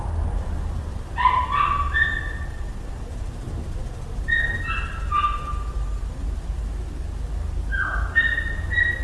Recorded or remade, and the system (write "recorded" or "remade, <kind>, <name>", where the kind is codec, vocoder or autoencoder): recorded